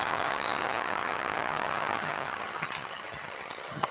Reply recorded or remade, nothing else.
remade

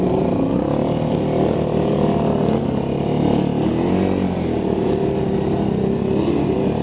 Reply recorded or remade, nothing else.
recorded